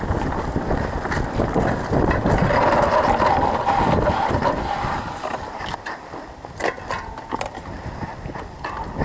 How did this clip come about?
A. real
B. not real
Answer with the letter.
A